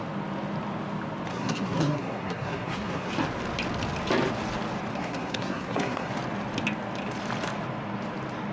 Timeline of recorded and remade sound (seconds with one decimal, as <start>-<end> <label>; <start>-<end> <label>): 0.0-1.3 recorded; 1.3-3.1 remade; 3.1-4.9 recorded; 4.9-6.1 remade; 6.1-8.5 recorded